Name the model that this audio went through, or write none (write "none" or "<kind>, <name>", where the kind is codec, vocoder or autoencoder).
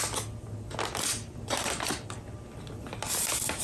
none